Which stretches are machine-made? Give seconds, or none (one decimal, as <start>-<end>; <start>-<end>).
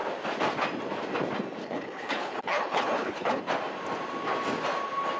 1.6-3.4